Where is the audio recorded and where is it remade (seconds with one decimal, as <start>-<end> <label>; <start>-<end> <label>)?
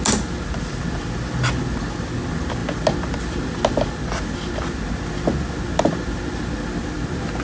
0.0-7.4 recorded